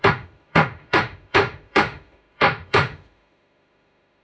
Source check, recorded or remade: remade